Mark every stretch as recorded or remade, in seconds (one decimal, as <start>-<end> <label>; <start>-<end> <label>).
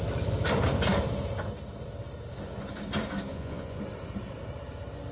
0.0-3.3 recorded; 3.3-3.8 remade; 3.8-5.1 recorded